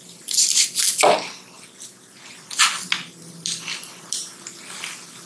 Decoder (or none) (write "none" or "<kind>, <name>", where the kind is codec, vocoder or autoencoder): none